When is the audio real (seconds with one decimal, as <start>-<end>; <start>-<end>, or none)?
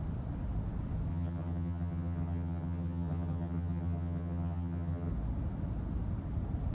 0.0-1.1; 5.1-6.7